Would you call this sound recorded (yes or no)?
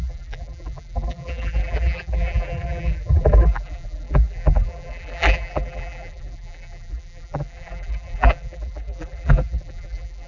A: no